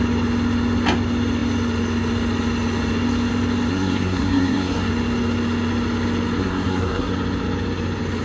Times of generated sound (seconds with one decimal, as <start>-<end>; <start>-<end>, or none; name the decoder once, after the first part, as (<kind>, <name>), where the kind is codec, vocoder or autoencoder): 3.7-4.9 (codec, SNAC); 6.4-7.1